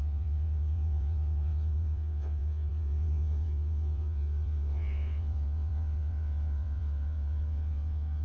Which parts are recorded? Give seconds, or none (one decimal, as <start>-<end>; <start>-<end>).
none